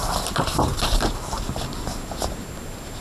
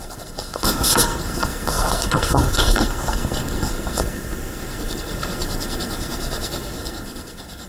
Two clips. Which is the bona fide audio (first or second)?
first